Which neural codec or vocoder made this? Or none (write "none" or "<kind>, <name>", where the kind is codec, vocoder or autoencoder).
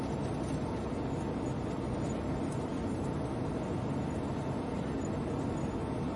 none